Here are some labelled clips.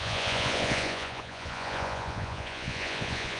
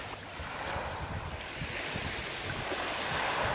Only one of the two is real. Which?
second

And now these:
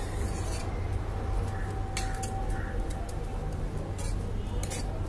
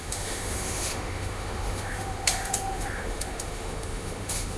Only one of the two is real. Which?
first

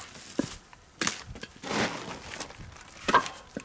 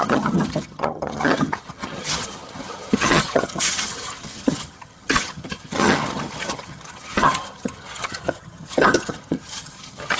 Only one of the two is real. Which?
first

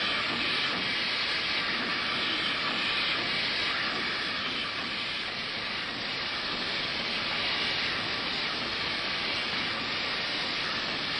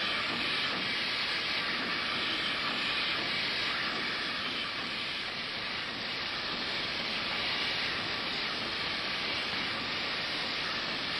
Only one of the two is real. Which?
first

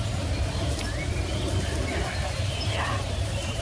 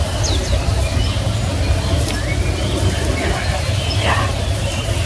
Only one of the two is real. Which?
second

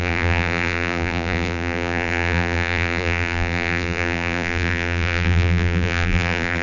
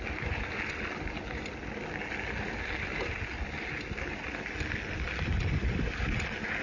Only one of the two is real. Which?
second